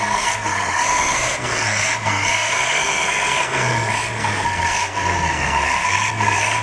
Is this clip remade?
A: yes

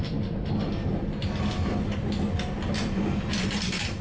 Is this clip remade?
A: no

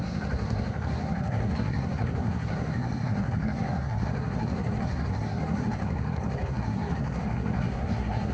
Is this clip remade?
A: yes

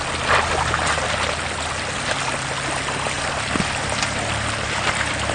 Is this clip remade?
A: no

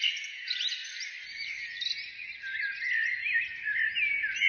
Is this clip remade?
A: no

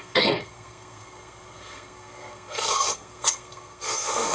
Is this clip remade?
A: yes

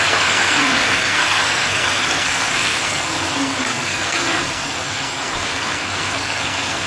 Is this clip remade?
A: yes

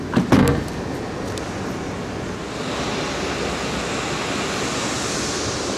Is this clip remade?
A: no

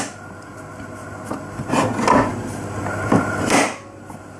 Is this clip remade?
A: no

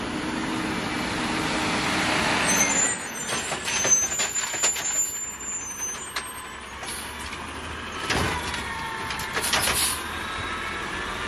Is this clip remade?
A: no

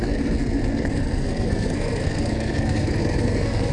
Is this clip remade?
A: yes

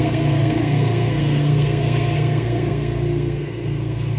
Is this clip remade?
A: yes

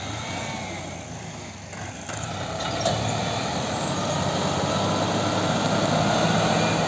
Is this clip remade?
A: no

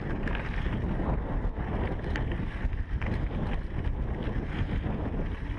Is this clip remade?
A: no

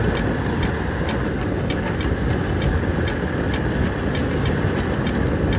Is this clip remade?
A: no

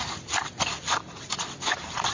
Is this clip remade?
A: no